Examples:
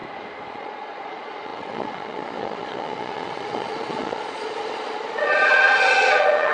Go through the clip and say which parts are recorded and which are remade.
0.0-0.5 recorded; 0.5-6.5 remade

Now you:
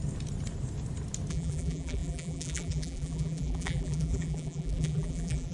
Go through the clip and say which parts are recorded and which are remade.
0.0-1.3 recorded; 1.3-5.5 remade

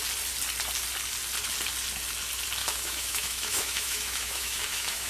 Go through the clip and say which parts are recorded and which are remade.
0.0-2.6 recorded; 2.6-5.1 remade

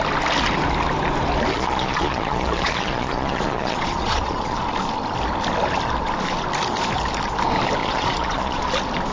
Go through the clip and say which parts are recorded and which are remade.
0.0-1.5 recorded; 1.5-4.6 remade; 4.6-7.8 recorded; 7.8-8.6 remade; 8.6-9.1 recorded

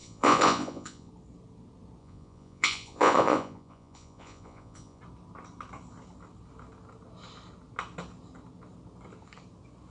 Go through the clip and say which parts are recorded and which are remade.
0.0-1.1 remade; 1.1-2.0 recorded; 2.0-5.0 remade; 5.0-9.9 recorded